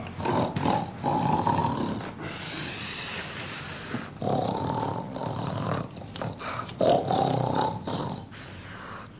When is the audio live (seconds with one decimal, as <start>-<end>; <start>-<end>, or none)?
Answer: 0.0-3.1; 4.1-5.2; 8.0-9.2